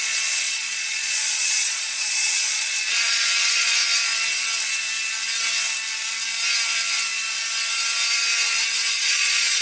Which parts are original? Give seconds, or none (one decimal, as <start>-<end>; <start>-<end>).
3.8-8.9